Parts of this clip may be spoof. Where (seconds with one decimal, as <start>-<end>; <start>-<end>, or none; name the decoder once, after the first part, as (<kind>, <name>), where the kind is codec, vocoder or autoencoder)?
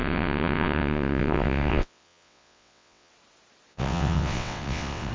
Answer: 0.0-3.1 (vocoder, WaveNeXt); 3.7-5.1